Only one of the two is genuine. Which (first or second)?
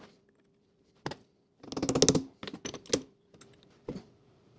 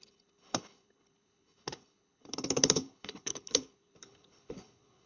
first